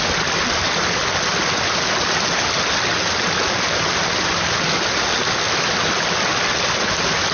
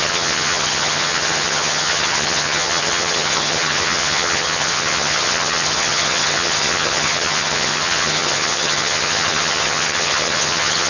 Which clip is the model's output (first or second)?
second